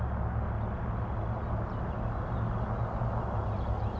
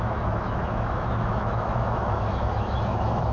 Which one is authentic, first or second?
first